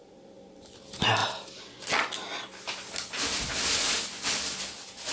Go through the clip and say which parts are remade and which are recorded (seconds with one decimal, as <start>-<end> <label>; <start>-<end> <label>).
0.0-5.1 recorded